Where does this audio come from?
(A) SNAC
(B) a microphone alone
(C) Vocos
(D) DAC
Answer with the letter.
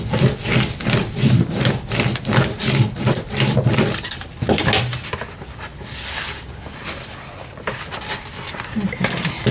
B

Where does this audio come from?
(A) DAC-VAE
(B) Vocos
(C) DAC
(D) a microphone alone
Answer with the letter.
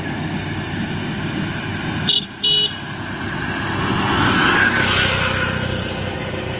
D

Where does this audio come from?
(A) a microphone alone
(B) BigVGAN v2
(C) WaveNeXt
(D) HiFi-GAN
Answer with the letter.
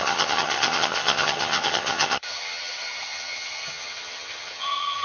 D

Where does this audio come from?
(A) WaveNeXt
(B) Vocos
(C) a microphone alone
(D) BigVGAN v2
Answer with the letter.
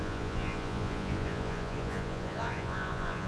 B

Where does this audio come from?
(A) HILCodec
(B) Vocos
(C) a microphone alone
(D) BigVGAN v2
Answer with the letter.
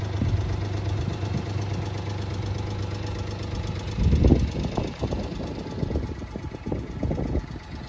C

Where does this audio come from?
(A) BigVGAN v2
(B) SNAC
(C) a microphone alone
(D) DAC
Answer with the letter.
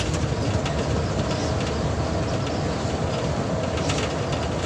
C